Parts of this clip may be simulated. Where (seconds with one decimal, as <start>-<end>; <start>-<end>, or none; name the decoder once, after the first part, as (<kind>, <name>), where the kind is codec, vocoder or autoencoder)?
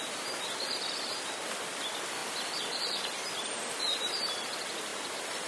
0.0-5.5 (vocoder, BigVGAN v2)